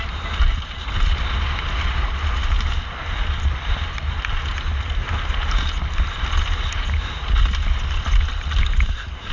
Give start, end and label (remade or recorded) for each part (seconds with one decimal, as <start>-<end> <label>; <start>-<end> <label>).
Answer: 0.0-9.3 recorded